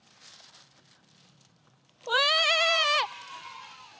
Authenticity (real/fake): fake